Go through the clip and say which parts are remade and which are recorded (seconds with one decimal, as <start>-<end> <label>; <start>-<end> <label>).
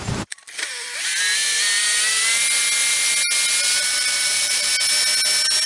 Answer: 0.0-0.4 remade; 0.4-3.8 recorded; 3.8-4.7 remade; 4.7-5.7 recorded